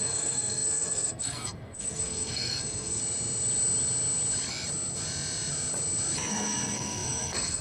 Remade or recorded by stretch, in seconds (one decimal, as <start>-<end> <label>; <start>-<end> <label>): 0.0-3.0 remade; 3.0-6.3 recorded; 6.3-7.6 remade